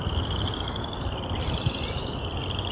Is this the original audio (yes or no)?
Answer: yes